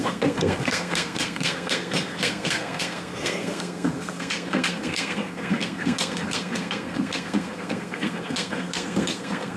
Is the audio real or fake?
fake